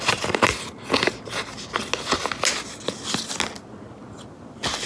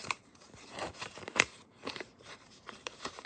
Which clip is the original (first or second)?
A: first